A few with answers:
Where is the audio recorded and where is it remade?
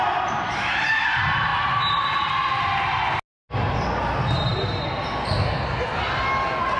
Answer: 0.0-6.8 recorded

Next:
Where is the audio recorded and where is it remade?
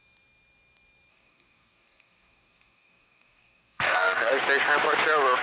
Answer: 0.0-1.1 recorded; 1.1-4.3 remade; 4.3-5.4 recorded